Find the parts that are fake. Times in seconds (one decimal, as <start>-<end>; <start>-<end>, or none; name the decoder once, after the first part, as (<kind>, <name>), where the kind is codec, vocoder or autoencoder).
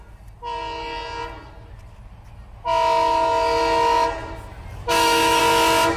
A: 4.8-5.4 (autoencoder, DAC-VAE)